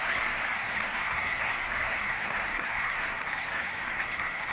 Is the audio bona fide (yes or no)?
no